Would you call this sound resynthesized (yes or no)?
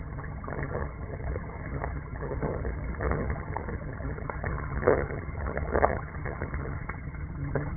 yes